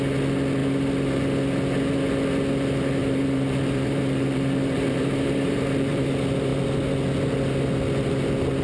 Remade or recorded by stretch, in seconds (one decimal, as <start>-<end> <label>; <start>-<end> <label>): 0.0-3.0 recorded; 3.0-6.1 remade; 6.1-8.6 recorded